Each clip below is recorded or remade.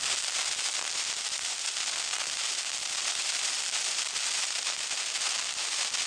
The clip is recorded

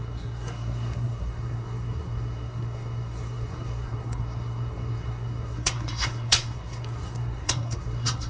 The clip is remade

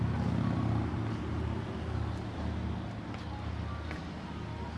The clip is recorded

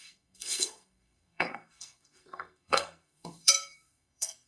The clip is remade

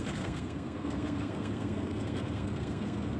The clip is remade